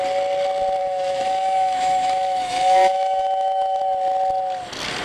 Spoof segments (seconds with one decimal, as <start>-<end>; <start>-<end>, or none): 0.8-3.8